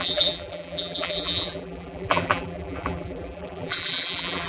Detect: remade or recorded remade